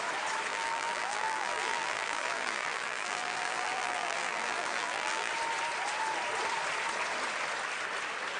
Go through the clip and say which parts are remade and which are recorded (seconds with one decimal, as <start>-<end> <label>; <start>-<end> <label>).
0.0-0.5 recorded; 0.5-5.3 remade; 5.3-8.4 recorded